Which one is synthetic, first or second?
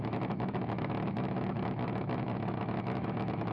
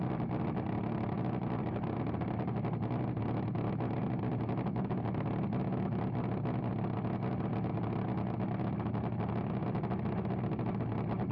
first